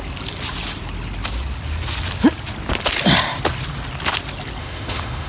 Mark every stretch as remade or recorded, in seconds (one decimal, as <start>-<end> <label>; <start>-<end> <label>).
0.0-4.6 recorded; 4.6-5.3 remade